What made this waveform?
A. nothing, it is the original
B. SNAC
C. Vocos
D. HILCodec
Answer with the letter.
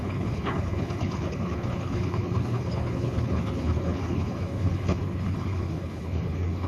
D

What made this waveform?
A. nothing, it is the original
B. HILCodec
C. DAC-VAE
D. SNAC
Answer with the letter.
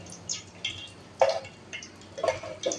A